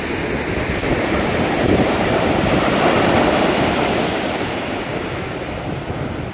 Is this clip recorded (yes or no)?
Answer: yes